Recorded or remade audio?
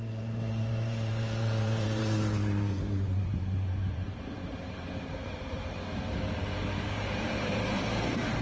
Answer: remade